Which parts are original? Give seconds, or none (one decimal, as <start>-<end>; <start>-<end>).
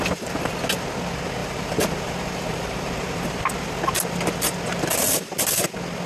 0.0-1.4; 3.5-6.1